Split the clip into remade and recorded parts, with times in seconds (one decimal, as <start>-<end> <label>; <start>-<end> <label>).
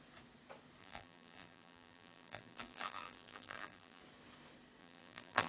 0.0-0.8 recorded; 0.8-4.0 remade; 4.0-4.8 recorded; 4.8-5.5 remade